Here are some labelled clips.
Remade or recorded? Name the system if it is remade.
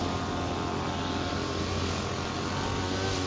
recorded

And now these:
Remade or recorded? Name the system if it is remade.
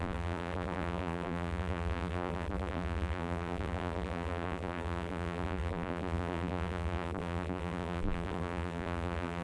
remade, vocoder, BigVGAN v2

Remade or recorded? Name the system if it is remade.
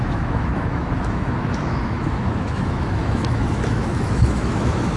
remade, autoencoder, DAC-VAE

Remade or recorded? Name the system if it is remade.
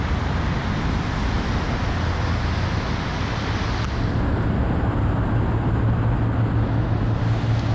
recorded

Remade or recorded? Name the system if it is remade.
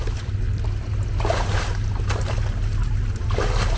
recorded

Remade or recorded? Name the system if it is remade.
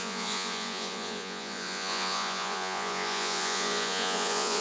remade, vocoder, Vocos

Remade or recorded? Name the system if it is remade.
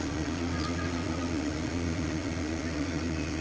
remade, vocoder, Vocos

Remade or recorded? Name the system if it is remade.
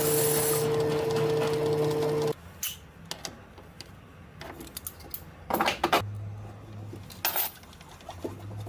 recorded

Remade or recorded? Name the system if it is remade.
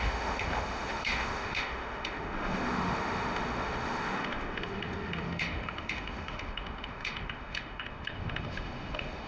remade, autoencoder, DAC-VAE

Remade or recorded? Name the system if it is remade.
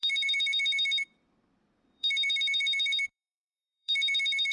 remade, vocoder, BigVGAN v2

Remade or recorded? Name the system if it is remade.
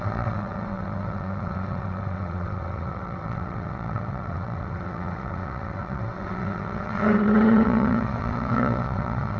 remade, vocoder, WaveNeXt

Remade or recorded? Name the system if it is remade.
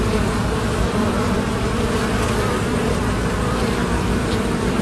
remade, vocoder, BigVGAN v2